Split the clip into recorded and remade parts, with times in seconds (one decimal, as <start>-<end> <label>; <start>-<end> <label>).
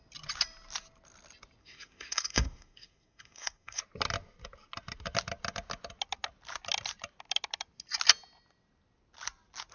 0.0-1.6 recorded; 1.6-3.8 remade; 3.8-9.7 recorded